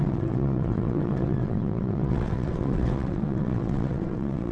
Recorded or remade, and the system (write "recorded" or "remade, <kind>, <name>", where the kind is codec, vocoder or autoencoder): remade, vocoder, WaveNeXt